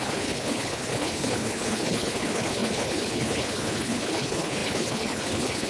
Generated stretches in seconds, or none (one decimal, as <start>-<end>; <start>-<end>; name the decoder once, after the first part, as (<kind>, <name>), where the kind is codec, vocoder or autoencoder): 0.0-5.7 (codec, HILCodec)